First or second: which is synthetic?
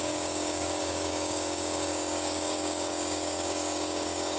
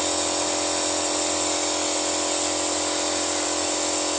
first